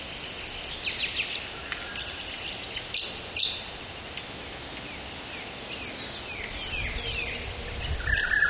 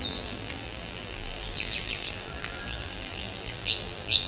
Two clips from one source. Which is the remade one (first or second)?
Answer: second